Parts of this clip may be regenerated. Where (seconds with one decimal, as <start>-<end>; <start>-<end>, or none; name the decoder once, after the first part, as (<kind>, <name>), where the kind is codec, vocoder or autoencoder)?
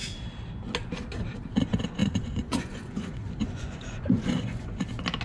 2.0-4.8 (vocoder, Vocos)